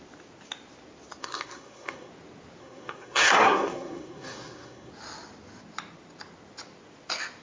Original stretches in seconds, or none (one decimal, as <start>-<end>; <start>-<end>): 0.0-1.2; 2.1-2.6; 4.9-7.4